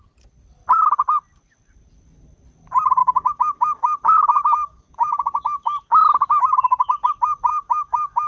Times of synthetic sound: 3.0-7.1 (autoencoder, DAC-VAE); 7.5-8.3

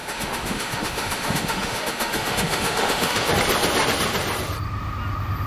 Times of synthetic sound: 0.0-3.3 (autoencoder, DAC-VAE)

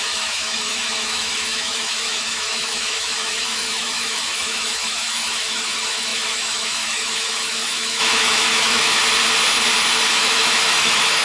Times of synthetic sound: 0.0-9.0 (autoencoder, DAC-VAE); 10.1-11.2

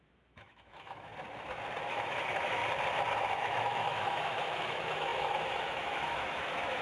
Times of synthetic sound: 0.0-1.1 (autoencoder, DAC-VAE); 1.9-2.6; 3.3-6.8

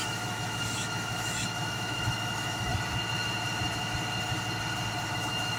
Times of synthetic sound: 0.0-2.7 (autoencoder, DAC-VAE); 5.1-5.6

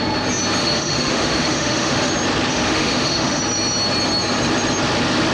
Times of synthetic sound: 0.6-2.1 (autoencoder, DAC-VAE); 2.5-3.4